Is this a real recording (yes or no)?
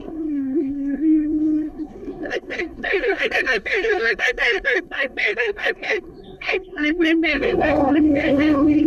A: no